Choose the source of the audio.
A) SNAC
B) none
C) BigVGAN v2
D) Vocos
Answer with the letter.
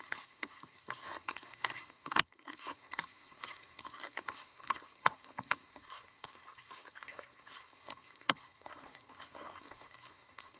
A